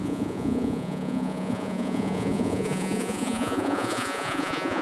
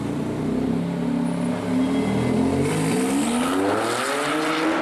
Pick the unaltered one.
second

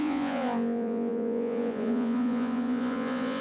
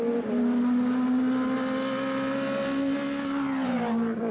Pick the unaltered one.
second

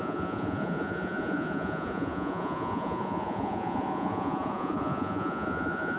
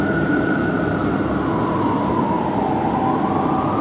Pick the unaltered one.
second